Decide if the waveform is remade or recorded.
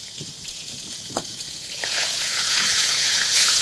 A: remade